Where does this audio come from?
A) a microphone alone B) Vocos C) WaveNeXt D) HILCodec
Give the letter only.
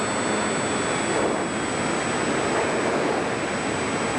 A